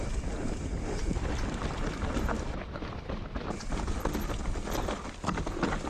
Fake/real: fake